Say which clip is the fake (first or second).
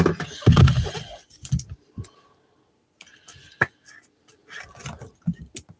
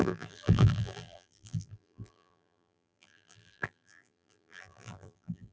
second